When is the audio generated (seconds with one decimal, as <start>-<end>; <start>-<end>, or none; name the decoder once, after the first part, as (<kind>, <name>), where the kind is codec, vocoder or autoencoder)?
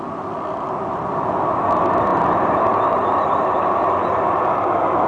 none